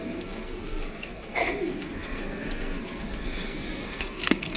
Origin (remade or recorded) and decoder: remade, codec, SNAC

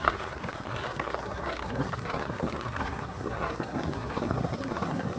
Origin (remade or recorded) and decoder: remade, codec, SNAC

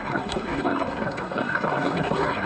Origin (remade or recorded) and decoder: remade, codec, SNAC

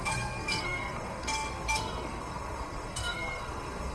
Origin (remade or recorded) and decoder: remade, codec, SNAC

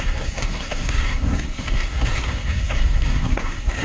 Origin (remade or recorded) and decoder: remade, codec, SNAC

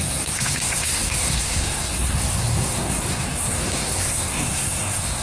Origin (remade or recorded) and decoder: remade, codec, SNAC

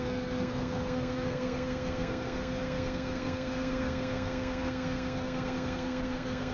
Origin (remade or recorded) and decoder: remade, codec, SNAC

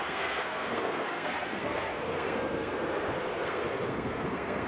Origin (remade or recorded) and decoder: remade, codec, SNAC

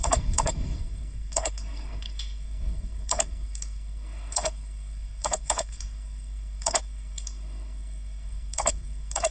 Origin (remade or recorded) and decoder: remade, codec, SNAC